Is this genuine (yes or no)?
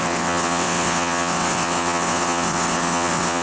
no